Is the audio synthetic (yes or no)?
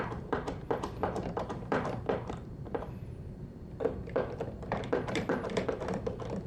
yes